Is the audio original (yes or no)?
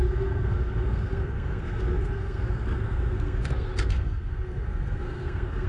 no